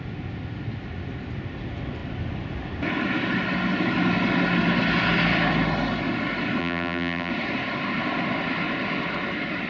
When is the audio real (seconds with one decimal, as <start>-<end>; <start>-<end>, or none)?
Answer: 0.0-6.6; 7.3-9.7